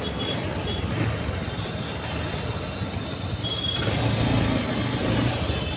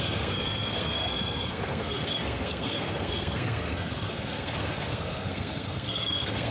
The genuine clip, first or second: first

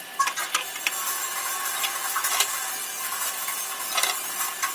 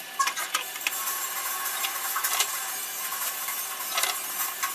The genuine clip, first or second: first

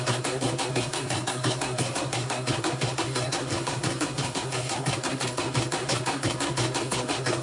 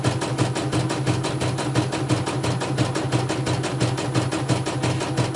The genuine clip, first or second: second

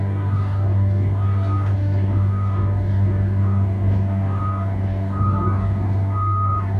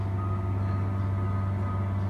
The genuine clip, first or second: second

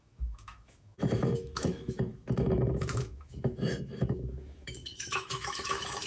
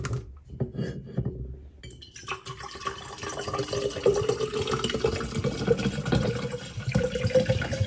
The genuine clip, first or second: second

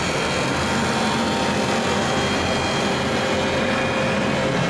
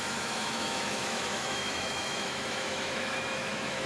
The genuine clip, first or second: first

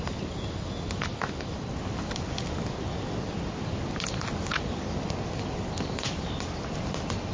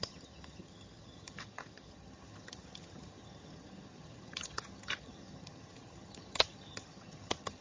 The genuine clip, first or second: first